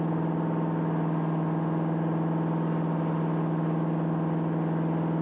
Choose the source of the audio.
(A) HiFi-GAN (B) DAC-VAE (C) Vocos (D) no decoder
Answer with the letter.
D